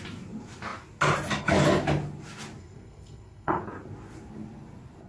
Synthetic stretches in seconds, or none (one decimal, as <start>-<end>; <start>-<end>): 2.6-3.6